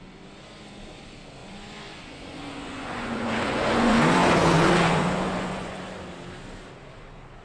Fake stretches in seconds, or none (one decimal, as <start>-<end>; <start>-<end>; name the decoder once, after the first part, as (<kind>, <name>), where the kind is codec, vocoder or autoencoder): 1.4-5.8 (vocoder, Vocos)